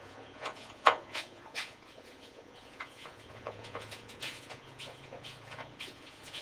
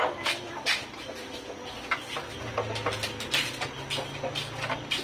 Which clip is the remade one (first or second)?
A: first